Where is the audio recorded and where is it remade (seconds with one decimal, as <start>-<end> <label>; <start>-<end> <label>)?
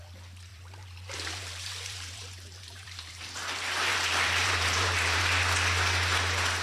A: 0.0-0.5 recorded; 0.5-3.2 remade; 3.2-3.9 recorded; 3.9-5.2 remade; 5.2-6.6 recorded